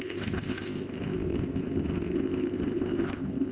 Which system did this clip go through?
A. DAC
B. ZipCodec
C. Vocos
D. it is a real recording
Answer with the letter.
B